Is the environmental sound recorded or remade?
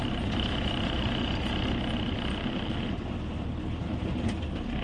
recorded